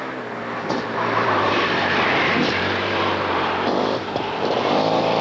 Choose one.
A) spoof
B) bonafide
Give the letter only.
A